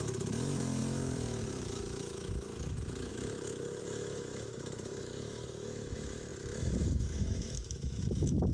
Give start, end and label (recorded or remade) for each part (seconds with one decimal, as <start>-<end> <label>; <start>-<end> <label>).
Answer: 0.0-8.5 remade

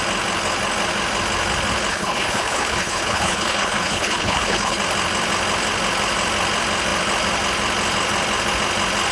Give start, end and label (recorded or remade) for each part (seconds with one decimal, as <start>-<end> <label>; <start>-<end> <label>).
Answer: 0.0-1.9 recorded; 1.9-4.8 remade; 4.8-9.1 recorded

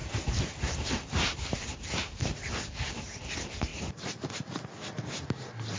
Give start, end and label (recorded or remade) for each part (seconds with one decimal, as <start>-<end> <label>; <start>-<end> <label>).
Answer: 0.0-2.5 remade; 2.5-3.7 recorded; 3.7-4.3 remade; 4.3-5.8 recorded

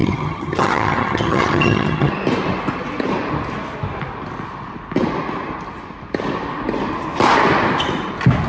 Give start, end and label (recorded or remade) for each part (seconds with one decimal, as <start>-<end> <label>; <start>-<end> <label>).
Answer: 0.0-2.1 remade; 2.1-8.5 recorded

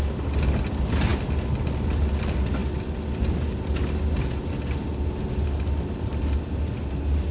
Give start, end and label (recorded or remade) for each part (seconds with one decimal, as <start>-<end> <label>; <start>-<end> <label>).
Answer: 0.0-7.3 recorded